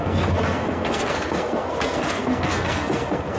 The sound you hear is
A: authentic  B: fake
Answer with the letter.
B